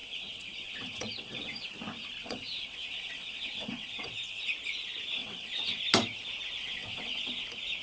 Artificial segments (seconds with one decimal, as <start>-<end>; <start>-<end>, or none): 0.0-1.7; 2.2-4.5; 5.2-5.8; 6.6-7.3